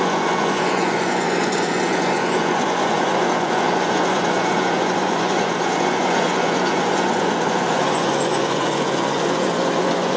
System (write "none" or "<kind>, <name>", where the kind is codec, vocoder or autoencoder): vocoder, Vocos